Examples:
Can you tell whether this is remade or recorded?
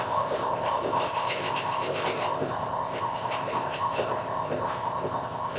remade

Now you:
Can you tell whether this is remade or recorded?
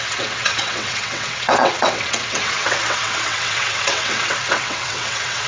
remade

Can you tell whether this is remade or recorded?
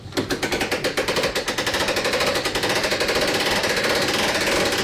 recorded